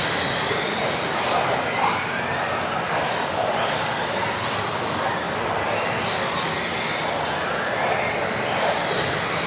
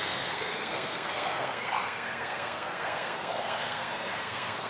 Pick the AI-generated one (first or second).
second